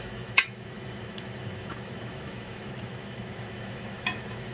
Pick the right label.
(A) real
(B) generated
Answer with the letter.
B